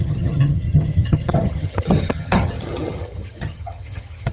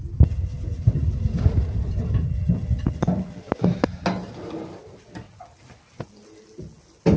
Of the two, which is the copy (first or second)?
first